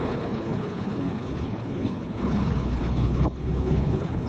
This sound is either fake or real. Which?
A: fake